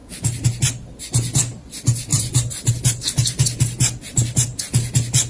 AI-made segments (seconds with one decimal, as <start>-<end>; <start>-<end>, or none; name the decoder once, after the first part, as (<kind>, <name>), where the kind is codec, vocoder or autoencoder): 2.1-2.7 (vocoder, BigVGAN v2)